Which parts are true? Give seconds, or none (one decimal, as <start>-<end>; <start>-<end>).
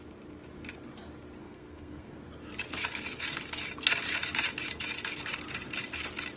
0.0-1.4; 2.2-6.4